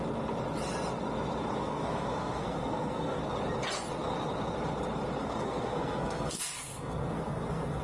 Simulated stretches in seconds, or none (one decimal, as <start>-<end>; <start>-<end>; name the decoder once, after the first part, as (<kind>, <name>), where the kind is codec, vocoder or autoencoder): 1.6-3.2 (codec, SNAC); 5.2-7.8